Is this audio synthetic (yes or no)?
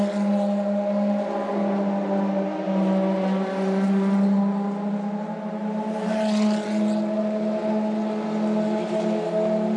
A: no